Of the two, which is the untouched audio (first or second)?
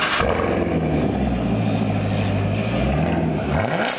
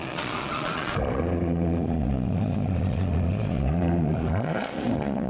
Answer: first